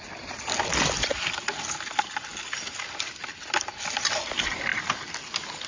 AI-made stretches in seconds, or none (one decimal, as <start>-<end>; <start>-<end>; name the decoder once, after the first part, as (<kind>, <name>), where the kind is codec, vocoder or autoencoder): none